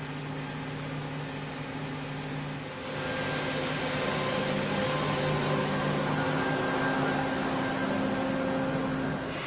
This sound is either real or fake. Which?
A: real